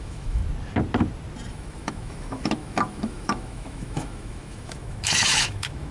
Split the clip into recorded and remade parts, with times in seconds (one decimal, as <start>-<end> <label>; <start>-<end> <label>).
0.0-0.4 remade; 0.4-1.5 recorded; 1.5-5.9 remade